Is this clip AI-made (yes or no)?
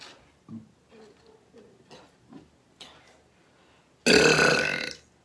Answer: no